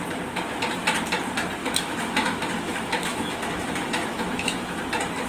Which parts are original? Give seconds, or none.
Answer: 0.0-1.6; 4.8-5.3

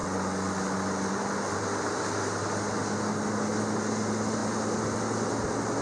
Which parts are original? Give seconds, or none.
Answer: 0.0-5.8

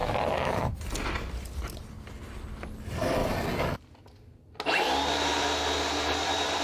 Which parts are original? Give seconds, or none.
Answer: 0.7-6.6

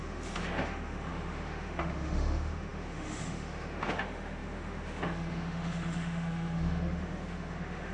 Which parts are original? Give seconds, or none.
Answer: none